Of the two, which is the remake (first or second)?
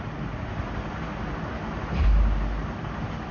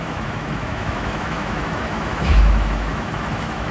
second